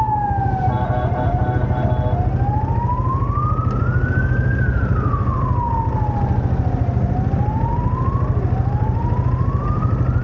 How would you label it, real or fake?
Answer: real